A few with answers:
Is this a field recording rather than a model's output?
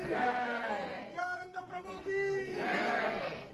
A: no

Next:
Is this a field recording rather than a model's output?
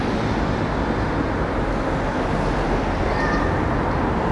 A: yes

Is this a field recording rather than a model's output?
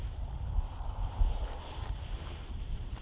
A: yes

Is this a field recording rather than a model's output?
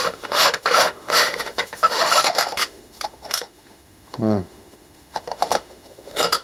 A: no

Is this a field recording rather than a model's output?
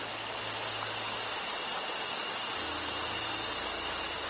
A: yes